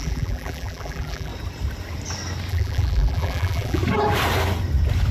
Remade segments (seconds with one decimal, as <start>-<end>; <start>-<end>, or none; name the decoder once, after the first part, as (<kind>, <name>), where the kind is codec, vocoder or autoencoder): 0.0-1.3 (vocoder, BigVGAN v2); 2.5-3.8